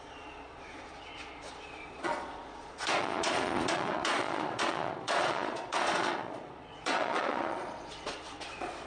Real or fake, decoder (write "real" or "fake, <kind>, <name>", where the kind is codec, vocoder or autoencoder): fake, vocoder, Vocos